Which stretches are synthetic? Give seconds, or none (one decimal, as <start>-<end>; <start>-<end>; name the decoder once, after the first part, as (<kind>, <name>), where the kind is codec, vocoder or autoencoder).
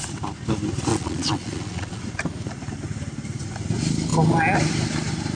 0.9-2.0 (vocoder, Vocos)